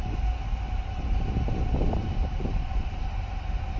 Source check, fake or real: real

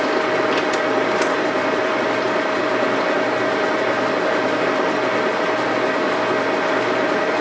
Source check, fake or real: real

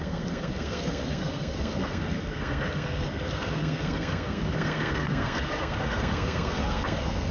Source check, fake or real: fake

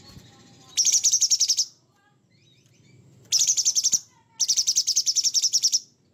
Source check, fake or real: real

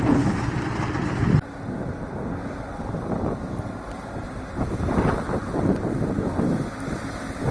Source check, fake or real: real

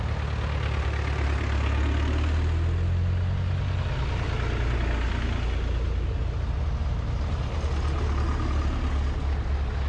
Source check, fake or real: real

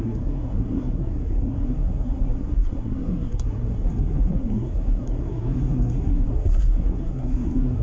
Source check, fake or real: fake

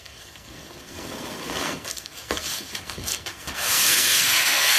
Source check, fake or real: fake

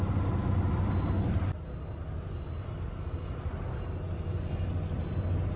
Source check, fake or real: real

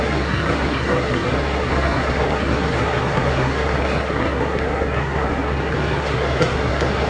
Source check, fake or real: fake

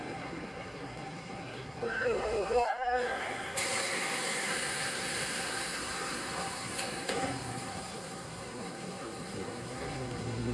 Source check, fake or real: fake